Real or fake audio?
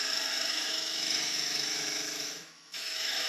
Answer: fake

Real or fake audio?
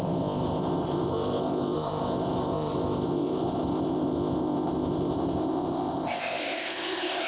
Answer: fake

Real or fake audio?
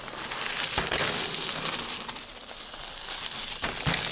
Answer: real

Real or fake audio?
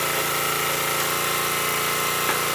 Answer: real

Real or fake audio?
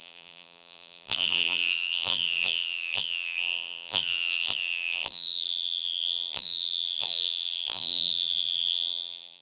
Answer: fake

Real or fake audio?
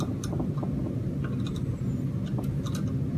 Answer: real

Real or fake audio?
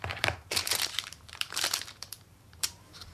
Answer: fake